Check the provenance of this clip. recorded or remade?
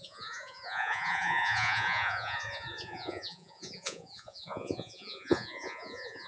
remade